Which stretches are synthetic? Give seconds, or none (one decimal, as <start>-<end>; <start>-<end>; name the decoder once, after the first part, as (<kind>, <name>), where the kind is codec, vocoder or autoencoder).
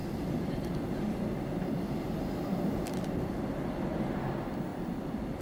0.0-2.0 (vocoder, BigVGAN v2); 2.5-3.4; 4.7-5.4